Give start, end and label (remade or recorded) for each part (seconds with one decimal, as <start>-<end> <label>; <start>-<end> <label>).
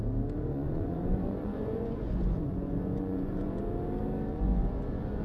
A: 0.0-0.5 recorded; 0.5-3.6 remade; 3.6-4.3 recorded; 4.3-5.2 remade